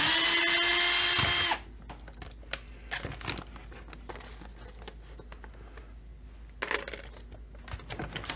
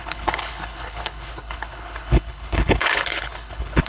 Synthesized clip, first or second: second